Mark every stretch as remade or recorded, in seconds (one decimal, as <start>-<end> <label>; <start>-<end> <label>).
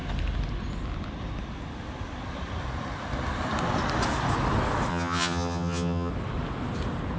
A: 0.0-4.9 recorded; 4.9-6.1 remade; 6.1-7.2 recorded